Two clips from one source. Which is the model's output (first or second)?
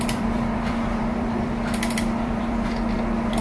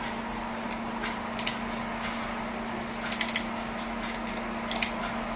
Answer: first